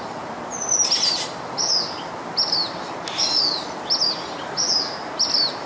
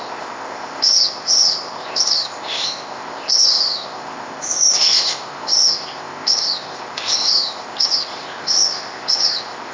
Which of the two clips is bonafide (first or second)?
first